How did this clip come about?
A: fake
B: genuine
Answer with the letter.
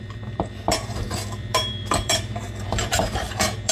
A